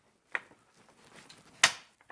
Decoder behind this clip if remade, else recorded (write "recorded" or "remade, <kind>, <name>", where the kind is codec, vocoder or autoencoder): recorded